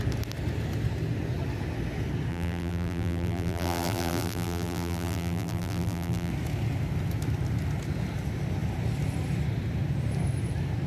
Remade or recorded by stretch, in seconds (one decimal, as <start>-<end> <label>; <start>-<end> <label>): 0.0-2.3 recorded; 2.3-6.3 remade; 6.3-10.9 recorded